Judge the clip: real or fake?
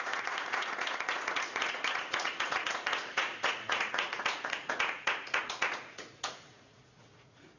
fake